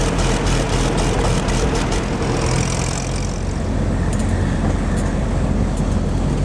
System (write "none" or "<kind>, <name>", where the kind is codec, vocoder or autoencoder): none